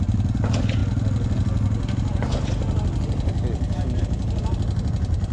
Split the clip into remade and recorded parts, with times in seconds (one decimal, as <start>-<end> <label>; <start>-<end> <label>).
0.0-5.3 recorded